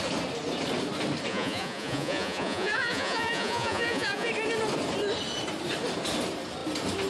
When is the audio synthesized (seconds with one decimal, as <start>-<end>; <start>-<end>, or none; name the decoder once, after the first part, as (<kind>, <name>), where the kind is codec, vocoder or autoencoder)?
1.3-4.3 (vocoder, Vocos)